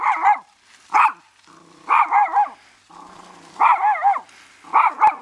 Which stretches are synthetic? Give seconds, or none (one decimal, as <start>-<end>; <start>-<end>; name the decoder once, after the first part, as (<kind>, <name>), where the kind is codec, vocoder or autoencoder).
none